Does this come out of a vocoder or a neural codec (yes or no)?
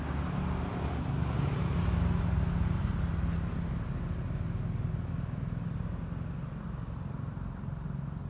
no